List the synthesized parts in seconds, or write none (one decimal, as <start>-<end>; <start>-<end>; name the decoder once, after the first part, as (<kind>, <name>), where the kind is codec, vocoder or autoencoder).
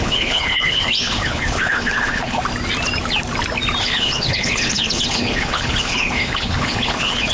0.0-2.4 (codec, HILCodec); 3.8-7.3